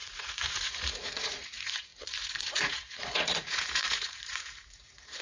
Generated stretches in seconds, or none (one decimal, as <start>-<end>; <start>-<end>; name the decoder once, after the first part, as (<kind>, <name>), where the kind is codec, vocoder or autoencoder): 0.0-5.2 (vocoder, Vocos)